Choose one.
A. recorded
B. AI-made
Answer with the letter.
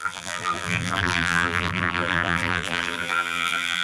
B